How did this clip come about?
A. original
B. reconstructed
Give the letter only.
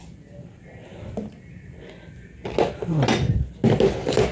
A